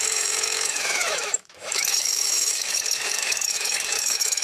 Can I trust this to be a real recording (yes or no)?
no